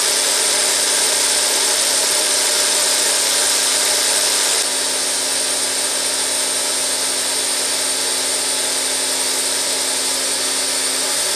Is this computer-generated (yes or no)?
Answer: no